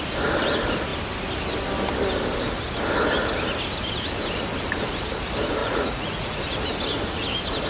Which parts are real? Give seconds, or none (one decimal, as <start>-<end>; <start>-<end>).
0.0-5.6; 6.4-7.7